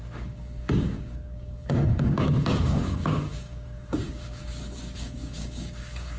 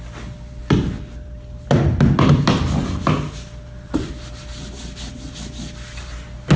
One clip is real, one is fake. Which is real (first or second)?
second